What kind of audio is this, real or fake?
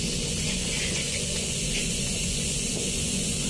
fake